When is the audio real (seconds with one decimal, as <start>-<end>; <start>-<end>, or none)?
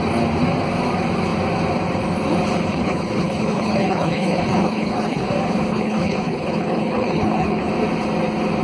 0.0-2.7; 5.3-5.7; 7.7-8.6